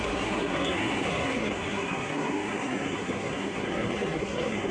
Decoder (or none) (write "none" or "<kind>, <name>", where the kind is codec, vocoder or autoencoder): codec, SNAC